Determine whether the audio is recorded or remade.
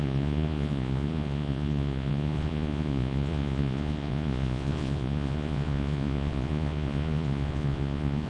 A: remade